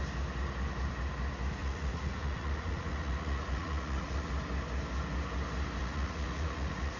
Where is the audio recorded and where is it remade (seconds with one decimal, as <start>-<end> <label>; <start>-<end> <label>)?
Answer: 0.0-1.6 recorded; 1.6-4.3 remade; 4.3-5.8 recorded; 5.8-7.0 remade